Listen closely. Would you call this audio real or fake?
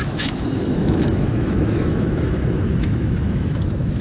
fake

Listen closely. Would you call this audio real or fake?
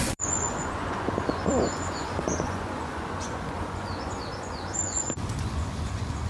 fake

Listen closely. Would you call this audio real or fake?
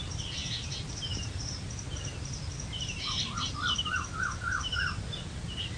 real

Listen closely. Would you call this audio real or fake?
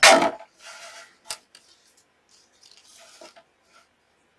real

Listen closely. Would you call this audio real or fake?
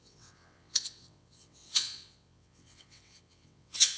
fake